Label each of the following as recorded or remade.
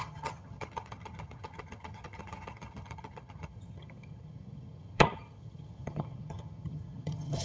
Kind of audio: remade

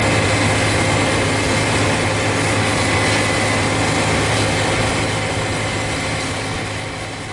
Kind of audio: recorded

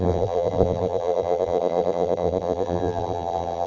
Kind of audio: remade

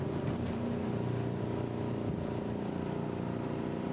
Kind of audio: recorded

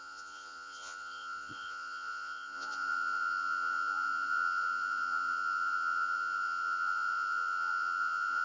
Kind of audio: remade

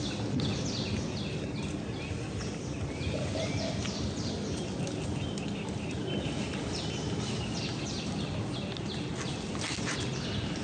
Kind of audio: recorded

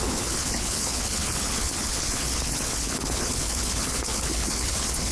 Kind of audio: remade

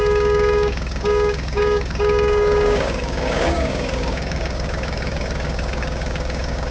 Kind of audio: remade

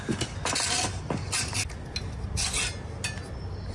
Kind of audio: recorded